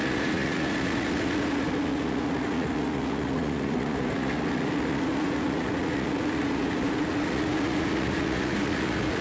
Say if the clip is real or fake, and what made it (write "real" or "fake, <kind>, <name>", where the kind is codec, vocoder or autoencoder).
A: fake, vocoder, Vocos